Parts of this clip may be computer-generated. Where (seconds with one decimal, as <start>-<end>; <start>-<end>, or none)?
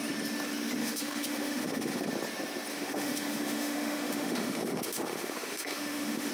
0.8-2.1; 2.7-6.3